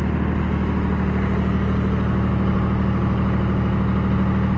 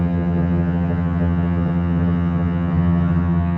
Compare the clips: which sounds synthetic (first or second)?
second